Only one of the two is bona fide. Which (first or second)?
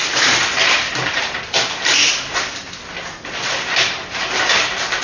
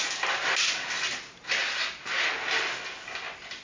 second